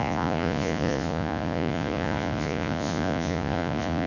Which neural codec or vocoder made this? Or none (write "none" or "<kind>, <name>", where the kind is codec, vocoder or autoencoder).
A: vocoder, Vocos